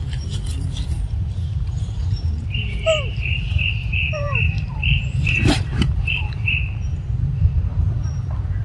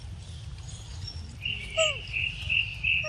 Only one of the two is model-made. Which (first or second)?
first